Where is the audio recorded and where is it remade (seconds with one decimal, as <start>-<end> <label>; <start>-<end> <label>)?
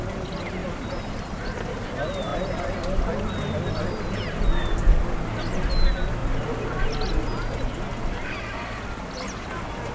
0.0-0.6 recorded; 0.6-1.7 remade; 1.7-9.9 recorded